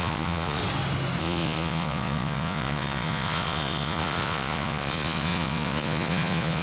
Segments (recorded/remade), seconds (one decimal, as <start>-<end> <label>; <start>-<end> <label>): 0.0-0.6 remade; 0.6-1.2 recorded; 1.2-6.6 remade